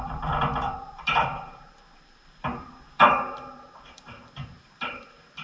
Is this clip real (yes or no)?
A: no